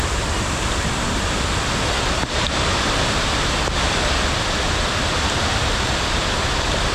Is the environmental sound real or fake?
real